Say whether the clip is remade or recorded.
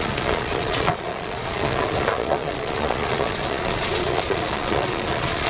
remade